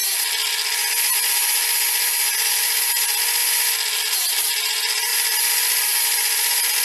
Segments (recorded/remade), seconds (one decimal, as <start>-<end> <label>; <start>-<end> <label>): 0.0-6.8 recorded